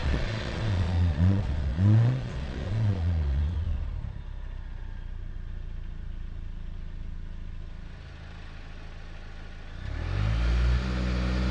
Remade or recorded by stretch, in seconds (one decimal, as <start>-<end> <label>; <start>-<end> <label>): 0.0-3.9 remade; 3.9-11.5 recorded